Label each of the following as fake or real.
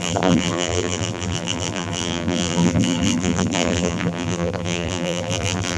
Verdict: fake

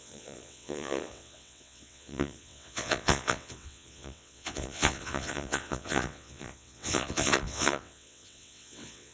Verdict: fake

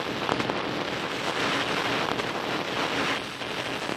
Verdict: real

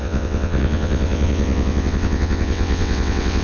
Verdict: fake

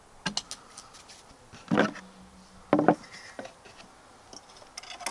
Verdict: real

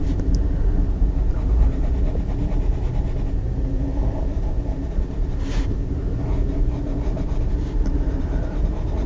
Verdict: fake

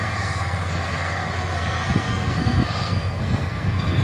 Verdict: fake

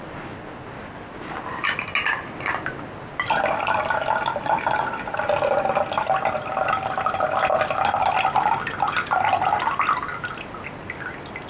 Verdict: real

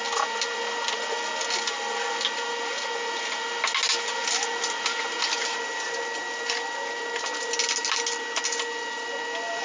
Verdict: real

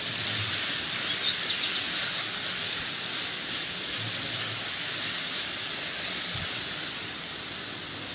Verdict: real